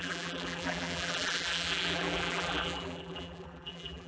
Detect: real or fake fake